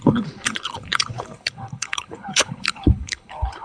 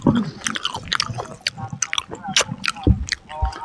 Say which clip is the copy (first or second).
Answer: first